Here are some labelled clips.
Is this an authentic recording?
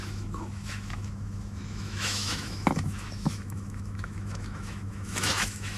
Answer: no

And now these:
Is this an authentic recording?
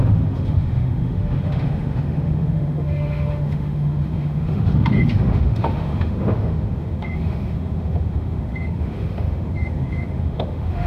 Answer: no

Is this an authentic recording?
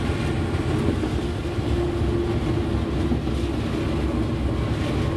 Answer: yes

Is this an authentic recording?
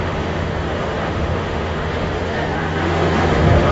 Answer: no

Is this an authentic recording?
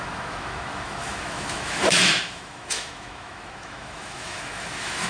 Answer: no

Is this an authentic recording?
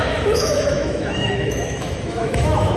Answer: no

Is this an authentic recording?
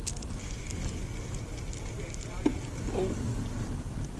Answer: yes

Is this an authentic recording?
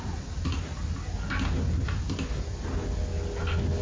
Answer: yes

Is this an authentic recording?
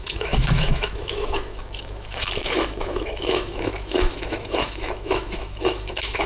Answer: no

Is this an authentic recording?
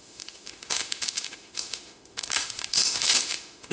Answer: no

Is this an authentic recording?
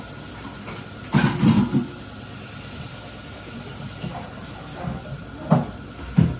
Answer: yes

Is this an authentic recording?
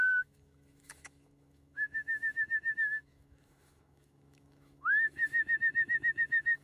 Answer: no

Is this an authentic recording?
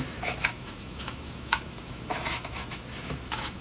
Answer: no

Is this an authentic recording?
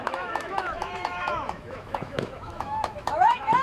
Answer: no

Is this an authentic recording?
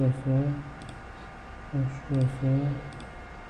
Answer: yes